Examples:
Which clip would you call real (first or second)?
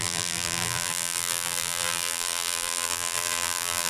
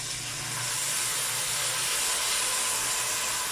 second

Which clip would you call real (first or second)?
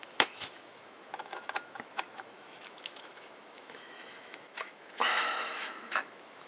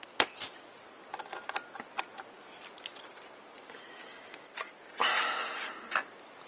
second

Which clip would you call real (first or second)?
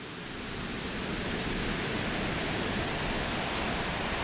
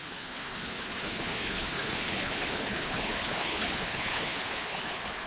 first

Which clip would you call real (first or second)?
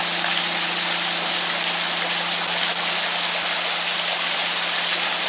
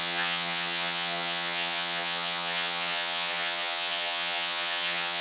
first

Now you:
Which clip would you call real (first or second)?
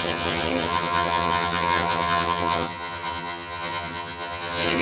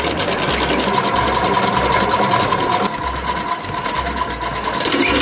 second